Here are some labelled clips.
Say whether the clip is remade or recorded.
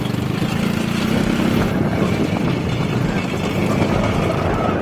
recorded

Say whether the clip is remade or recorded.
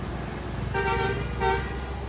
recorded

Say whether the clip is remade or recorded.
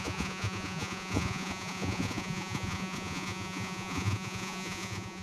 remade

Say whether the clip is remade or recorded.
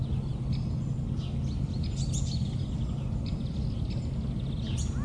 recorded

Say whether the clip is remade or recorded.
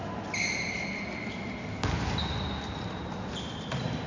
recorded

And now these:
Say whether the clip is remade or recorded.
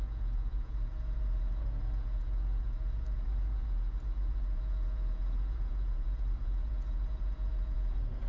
remade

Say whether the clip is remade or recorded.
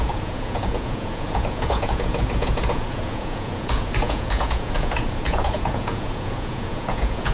remade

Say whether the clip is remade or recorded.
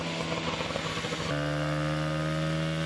recorded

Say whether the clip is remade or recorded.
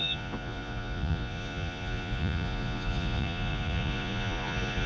remade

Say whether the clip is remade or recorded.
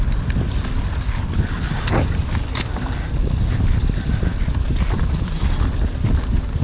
recorded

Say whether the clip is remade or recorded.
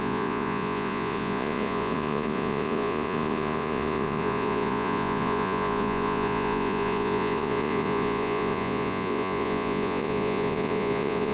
remade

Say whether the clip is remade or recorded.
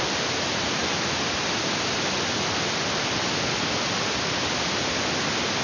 recorded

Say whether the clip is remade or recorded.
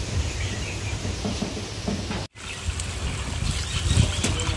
recorded